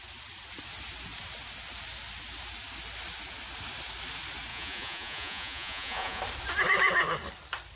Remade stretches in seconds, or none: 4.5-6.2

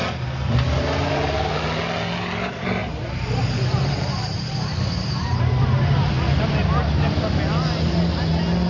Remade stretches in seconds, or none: 2.8-5.4